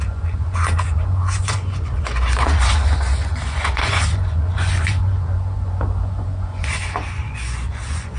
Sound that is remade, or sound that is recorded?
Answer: remade